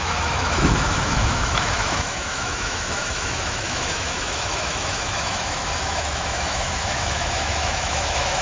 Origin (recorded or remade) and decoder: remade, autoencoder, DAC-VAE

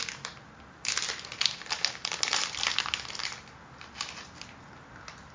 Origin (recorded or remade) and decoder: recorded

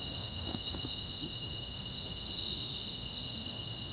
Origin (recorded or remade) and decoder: remade, autoencoder, DAC-VAE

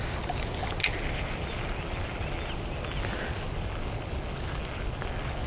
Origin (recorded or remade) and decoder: recorded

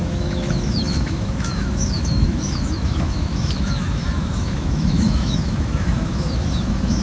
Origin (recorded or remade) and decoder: remade, autoencoder, DAC-VAE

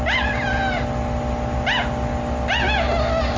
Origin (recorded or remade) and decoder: recorded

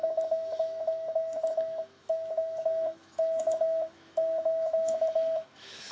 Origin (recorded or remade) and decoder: remade, autoencoder, DAC-VAE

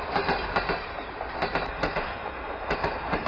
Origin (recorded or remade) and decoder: recorded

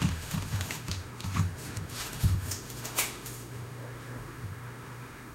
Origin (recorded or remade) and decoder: remade, autoencoder, DAC-VAE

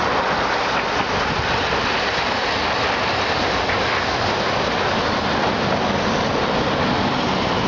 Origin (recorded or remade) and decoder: recorded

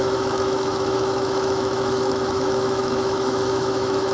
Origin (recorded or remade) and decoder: remade, autoencoder, DAC-VAE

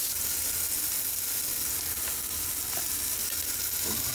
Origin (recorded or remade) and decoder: recorded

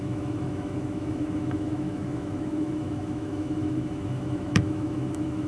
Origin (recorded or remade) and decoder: remade, autoencoder, DAC-VAE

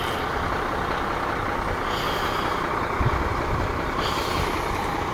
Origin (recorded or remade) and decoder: recorded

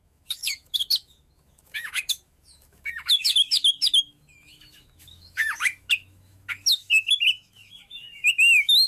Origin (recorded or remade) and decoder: remade, autoencoder, DAC-VAE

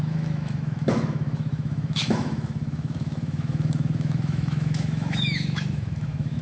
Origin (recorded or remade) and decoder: remade, autoencoder, DAC-VAE